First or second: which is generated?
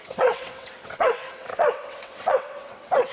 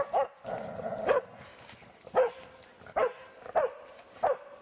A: first